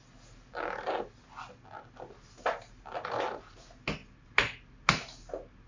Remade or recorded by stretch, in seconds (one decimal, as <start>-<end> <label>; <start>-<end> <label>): 0.0-5.7 recorded